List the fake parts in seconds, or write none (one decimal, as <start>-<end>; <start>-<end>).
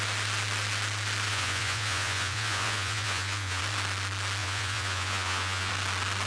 1.3-3.6; 4.4-5.7